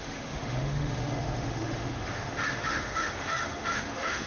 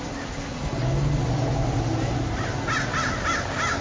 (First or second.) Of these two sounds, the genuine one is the second